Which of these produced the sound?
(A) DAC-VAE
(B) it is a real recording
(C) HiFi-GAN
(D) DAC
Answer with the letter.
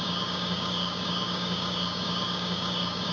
D